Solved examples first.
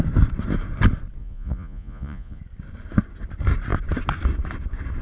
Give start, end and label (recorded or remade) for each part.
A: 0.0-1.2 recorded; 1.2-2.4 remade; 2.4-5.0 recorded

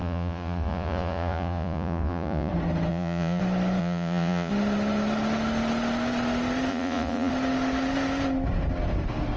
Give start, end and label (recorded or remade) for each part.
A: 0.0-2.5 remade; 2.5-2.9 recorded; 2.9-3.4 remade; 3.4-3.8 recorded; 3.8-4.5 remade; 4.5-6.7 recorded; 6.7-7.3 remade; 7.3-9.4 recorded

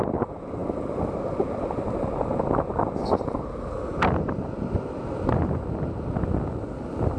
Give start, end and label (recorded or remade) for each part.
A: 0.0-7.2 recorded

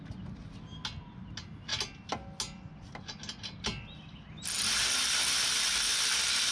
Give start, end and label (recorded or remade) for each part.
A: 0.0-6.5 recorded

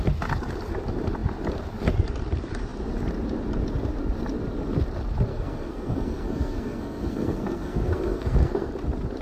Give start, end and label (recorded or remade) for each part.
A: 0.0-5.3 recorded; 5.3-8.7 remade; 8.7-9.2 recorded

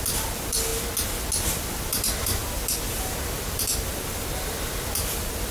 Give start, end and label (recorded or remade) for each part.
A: 0.0-0.7 remade; 0.7-1.5 recorded; 1.5-5.5 remade

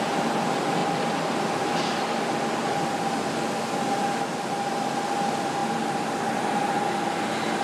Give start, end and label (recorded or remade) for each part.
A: 0.0-7.6 recorded